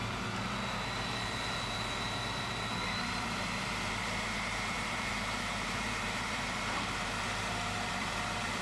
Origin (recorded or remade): remade